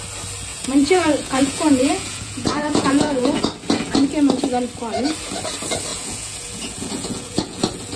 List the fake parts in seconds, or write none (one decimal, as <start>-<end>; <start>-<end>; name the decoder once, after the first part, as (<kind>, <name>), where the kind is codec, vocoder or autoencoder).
0.5-3.4 (vocoder, Vocos); 5.9-7.6